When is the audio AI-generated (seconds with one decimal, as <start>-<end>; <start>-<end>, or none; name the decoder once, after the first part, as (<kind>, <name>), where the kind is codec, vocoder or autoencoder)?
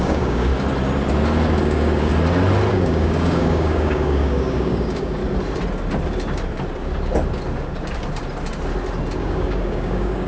0.0-0.5 (codec, DAC); 1.6-2.1; 2.7-5.2; 9.2-10.3